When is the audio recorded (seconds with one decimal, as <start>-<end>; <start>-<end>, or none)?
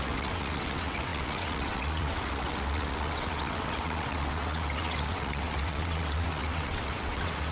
none